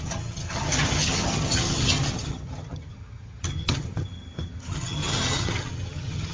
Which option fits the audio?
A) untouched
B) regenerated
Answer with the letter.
B